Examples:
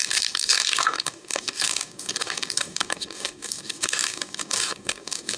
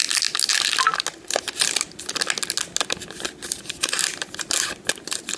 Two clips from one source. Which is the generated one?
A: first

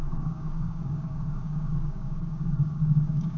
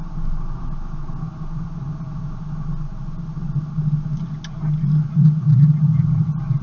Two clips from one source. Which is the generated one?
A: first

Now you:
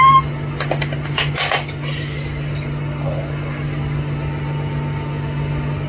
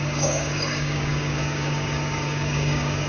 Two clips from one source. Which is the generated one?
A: second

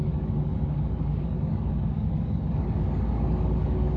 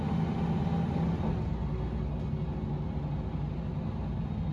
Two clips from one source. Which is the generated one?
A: first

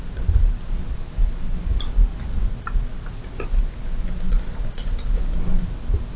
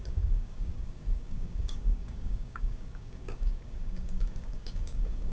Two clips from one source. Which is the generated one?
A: second